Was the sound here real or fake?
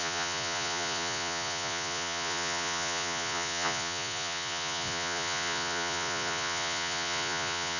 fake